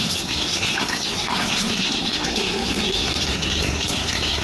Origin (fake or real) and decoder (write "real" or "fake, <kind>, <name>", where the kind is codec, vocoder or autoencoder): fake, codec, SNAC